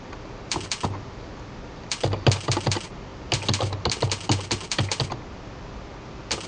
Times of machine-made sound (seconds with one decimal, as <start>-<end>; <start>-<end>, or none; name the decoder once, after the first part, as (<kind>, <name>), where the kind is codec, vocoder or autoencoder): none